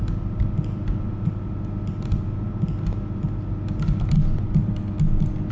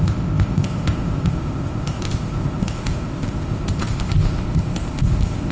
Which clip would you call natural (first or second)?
first